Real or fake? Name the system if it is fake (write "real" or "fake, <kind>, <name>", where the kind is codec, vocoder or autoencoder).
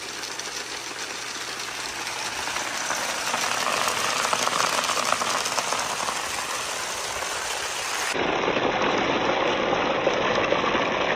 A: real